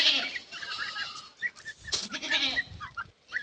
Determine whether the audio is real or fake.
real